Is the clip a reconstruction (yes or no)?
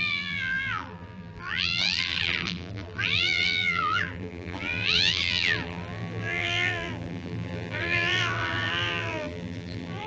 yes